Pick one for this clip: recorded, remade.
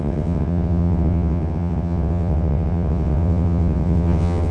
remade